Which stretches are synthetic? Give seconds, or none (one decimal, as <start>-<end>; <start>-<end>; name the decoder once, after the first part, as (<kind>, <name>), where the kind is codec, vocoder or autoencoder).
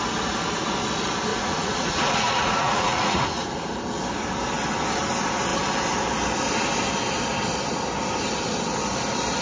1.3-3.4 (vocoder, Vocos)